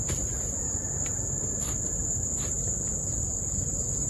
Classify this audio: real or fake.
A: fake